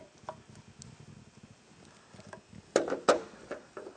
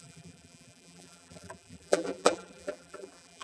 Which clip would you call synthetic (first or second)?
second